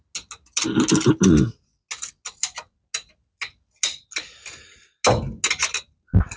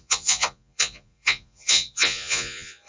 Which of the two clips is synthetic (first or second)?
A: second